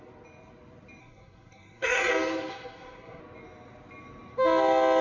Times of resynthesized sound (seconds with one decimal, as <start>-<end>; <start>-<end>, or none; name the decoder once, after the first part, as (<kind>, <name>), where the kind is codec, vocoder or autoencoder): 1.0-2.1 (codec, SNAC); 2.5-3.2